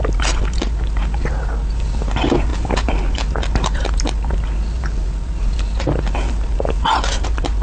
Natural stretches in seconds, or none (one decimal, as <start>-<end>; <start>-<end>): 0.0-7.6